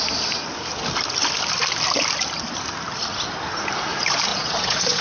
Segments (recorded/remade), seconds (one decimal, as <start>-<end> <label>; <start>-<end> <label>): 0.0-4.3 recorded; 4.3-5.0 remade